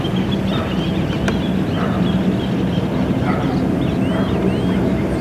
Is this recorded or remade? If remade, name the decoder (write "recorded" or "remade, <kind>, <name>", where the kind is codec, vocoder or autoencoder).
recorded